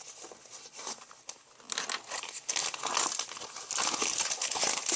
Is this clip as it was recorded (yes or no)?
yes